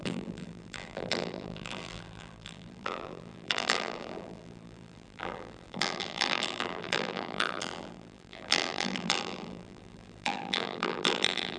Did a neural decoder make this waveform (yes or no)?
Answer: yes